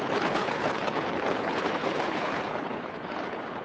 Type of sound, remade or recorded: remade